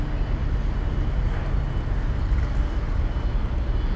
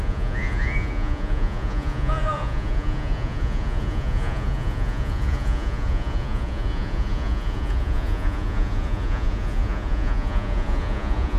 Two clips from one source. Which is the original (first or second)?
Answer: first